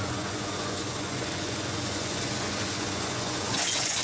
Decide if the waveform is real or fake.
fake